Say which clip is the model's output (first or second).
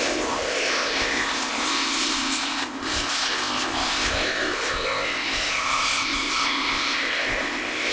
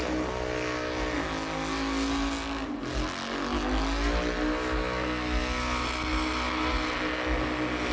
first